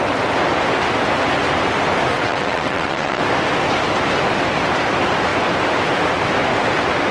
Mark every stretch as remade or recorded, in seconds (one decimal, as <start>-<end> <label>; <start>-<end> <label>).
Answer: 0.0-2.1 recorded; 2.1-3.2 remade; 3.2-7.1 recorded